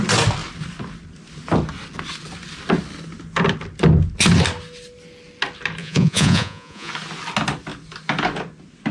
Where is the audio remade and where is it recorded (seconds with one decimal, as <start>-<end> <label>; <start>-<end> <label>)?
0.0-5.8 recorded; 5.8-6.9 remade; 6.9-8.9 recorded